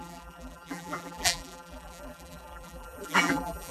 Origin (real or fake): fake